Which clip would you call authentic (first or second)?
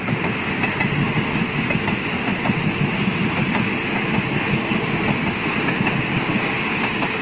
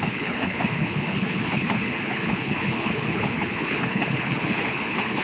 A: first